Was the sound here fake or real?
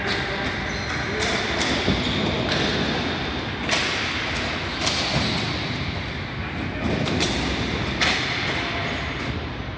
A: real